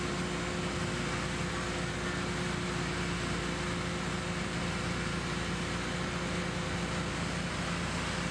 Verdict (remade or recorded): recorded